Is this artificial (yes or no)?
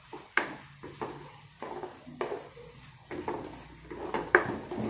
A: no